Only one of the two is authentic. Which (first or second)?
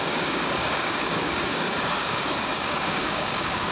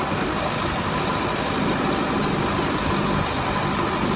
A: second